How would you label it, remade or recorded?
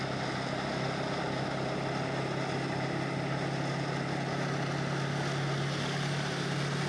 recorded